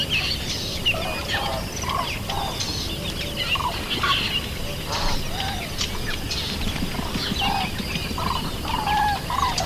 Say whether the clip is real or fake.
real